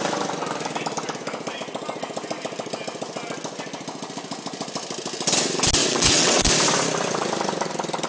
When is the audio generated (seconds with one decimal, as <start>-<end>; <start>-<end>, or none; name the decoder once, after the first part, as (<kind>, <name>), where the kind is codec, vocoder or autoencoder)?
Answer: 5.8-6.5 (vocoder, WaveNeXt)